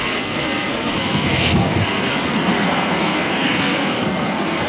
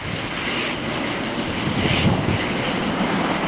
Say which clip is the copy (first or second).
first